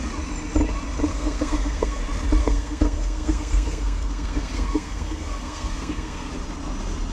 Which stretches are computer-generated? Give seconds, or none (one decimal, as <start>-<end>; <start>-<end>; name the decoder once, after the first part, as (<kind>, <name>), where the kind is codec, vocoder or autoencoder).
1.1-2.0 (codec, SNAC); 2.4-6.3